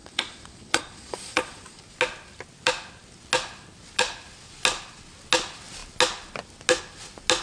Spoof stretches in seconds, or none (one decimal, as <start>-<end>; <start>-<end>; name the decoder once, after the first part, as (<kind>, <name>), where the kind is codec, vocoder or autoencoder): 0.0-1.8 (vocoder, Vocos)